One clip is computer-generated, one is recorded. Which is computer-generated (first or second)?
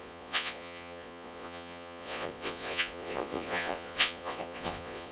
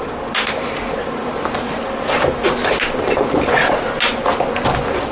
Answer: first